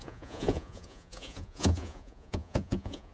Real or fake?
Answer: fake